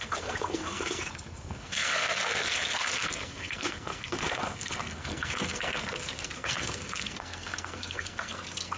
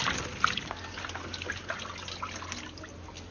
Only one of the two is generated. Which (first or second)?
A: first